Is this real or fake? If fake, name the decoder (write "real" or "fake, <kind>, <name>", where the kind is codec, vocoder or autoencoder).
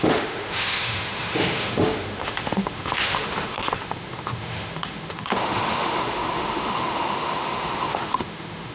fake, autoencoder, DAC-VAE